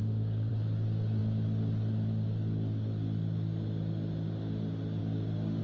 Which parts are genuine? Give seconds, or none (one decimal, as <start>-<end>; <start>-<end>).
0.5-5.0